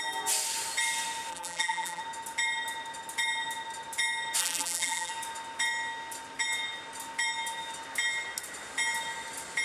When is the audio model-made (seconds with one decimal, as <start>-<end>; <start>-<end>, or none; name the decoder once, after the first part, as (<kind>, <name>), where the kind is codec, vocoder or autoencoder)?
1.3-2.0 (vocoder, BigVGAN v2); 4.4-5.1

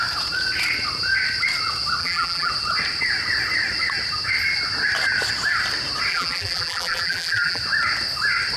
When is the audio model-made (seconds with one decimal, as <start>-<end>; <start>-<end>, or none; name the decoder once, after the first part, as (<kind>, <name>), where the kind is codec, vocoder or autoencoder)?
2.0-2.5 (vocoder, BigVGAN v2); 6.1-7.6

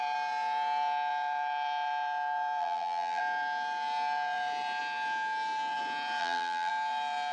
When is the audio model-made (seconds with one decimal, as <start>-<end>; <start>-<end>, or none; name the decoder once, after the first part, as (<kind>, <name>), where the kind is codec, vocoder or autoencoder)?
2.6-3.2 (vocoder, BigVGAN v2); 6.2-6.7

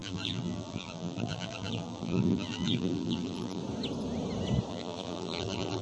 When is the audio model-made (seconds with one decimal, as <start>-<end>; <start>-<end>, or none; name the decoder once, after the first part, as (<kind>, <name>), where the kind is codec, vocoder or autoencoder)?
0.0-3.6 (vocoder, BigVGAN v2); 4.7-5.8

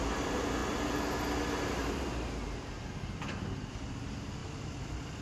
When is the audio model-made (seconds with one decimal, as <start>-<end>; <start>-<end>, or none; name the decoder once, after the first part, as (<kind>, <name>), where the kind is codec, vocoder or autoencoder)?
4.4-5.2 (vocoder, BigVGAN v2)